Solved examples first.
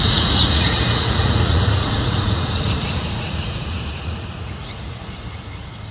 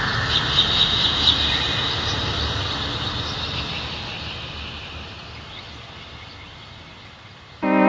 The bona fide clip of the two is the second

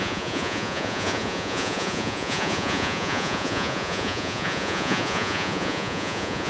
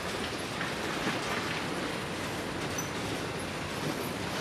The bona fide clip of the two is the second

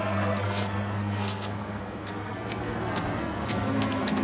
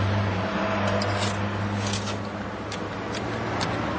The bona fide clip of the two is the second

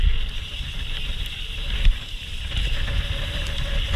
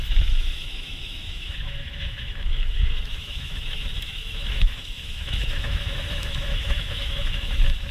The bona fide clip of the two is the first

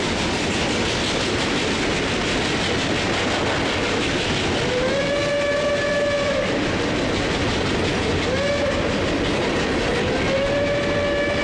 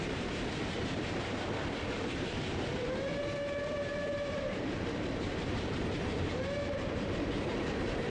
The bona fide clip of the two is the first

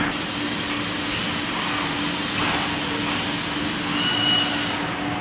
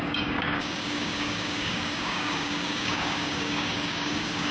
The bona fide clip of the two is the first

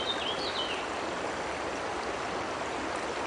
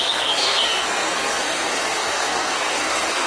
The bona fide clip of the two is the first